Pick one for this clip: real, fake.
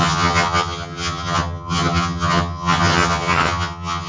fake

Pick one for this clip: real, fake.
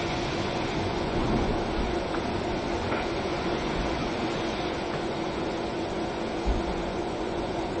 fake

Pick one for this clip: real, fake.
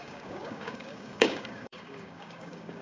fake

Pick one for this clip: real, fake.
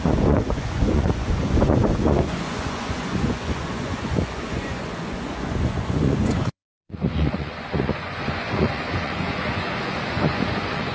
fake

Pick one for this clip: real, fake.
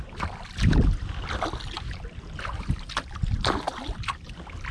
real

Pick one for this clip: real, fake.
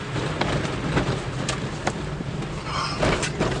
real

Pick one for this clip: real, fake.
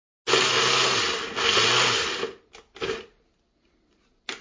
real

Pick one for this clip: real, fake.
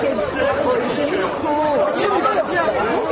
real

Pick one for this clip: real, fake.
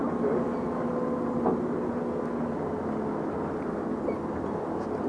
real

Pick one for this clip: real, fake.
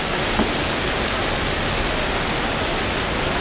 real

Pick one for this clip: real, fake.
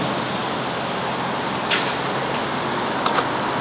real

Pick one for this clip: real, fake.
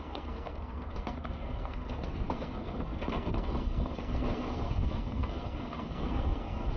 fake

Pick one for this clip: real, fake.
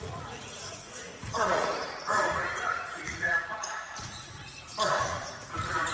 fake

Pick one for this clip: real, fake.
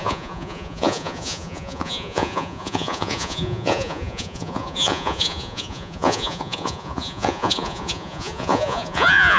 fake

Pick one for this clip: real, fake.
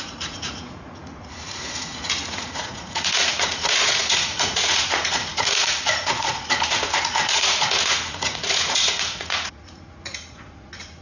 fake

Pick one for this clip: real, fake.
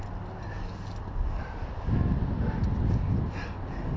real